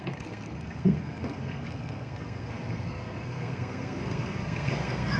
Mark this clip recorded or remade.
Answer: remade